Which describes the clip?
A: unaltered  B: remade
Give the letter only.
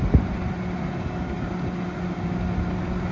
A